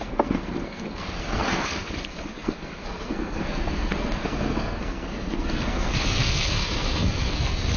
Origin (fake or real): fake